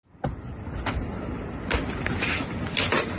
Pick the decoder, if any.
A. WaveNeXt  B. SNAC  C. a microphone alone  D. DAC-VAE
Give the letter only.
C